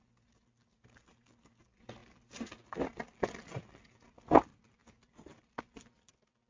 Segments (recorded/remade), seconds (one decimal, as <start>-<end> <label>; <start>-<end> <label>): 0.0-6.5 recorded